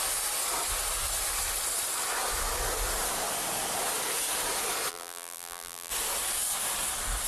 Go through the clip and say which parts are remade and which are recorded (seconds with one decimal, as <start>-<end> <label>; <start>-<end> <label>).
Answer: 0.0-4.9 recorded; 4.9-5.9 remade; 5.9-7.3 recorded